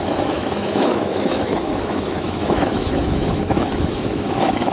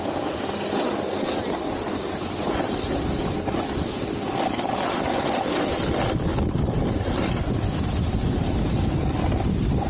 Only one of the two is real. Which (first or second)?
second